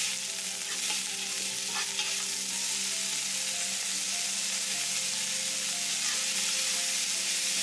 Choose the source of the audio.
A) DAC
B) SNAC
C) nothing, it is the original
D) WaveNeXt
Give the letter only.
C